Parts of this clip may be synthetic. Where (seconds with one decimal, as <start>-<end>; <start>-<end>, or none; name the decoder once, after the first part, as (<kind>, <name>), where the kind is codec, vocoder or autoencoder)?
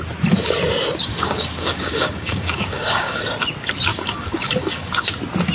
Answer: 1.1-3.2 (codec, DAC); 3.9-5.1